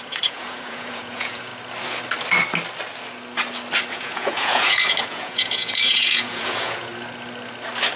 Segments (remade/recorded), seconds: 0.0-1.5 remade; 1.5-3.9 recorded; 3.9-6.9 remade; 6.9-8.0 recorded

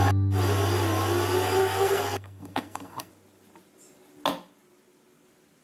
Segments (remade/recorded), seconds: 0.0-1.6 recorded; 1.6-3.1 remade; 3.1-5.6 recorded